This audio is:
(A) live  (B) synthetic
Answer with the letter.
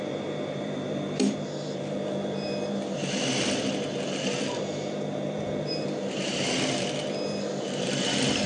B